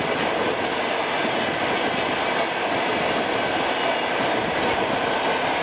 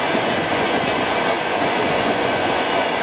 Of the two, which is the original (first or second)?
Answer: first